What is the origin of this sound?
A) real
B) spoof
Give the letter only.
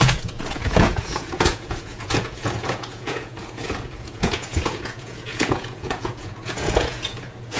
B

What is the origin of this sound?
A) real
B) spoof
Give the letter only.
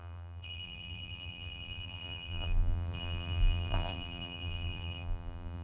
B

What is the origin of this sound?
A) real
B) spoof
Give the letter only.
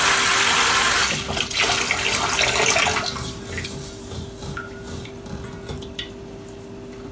A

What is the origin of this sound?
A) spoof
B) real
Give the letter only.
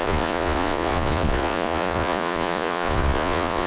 A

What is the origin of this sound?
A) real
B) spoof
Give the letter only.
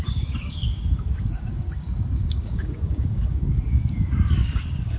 B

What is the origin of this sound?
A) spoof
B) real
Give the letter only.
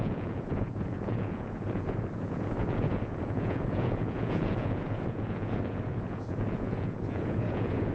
A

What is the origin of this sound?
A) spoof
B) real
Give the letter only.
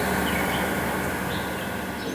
B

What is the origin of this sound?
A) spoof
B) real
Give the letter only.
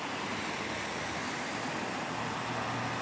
B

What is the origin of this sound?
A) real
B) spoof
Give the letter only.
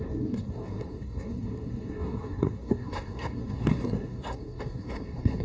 B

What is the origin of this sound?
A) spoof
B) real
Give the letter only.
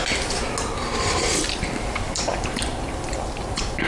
B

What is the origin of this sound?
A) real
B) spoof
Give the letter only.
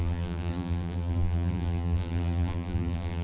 B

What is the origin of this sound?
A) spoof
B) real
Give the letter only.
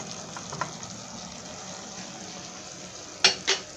B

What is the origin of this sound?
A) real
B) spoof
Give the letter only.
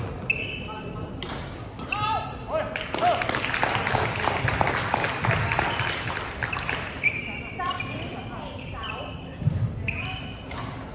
A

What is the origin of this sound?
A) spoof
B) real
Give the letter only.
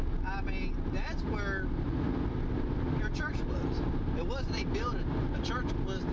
B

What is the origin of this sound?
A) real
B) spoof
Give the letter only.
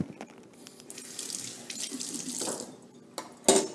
A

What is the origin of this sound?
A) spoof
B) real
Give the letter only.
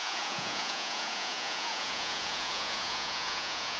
A